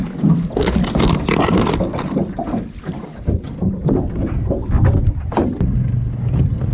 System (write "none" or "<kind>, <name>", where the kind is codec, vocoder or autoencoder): none